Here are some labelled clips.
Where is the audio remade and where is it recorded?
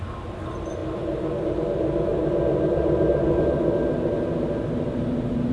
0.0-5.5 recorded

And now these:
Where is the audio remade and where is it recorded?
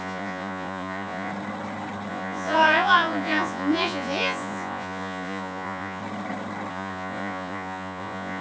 0.0-1.3 remade; 1.3-2.1 recorded; 2.1-6.0 remade; 6.0-6.7 recorded; 6.7-8.4 remade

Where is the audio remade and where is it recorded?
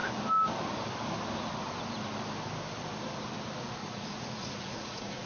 0.0-3.8 recorded; 3.8-5.3 remade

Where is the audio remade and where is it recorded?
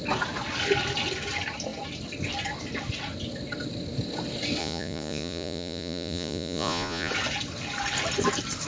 0.0-4.6 recorded; 4.6-7.1 remade; 7.1-8.7 recorded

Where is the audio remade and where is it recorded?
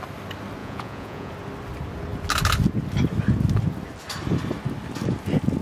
0.0-0.6 recorded; 0.6-1.3 remade; 1.3-5.6 recorded